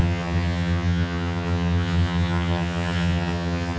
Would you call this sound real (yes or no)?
no